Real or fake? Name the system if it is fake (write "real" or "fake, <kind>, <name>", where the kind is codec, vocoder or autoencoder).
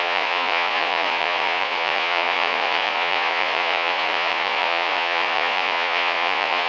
fake, vocoder, Vocos